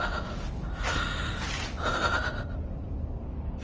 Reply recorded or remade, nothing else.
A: recorded